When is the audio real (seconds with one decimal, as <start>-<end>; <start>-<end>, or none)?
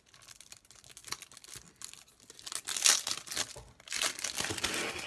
0.0-5.1